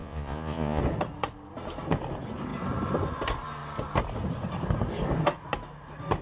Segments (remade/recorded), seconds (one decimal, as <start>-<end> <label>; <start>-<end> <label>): 0.0-0.8 remade; 0.8-6.2 recorded